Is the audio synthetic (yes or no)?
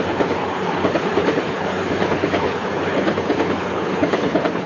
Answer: yes